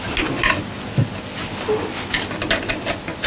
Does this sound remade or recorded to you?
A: recorded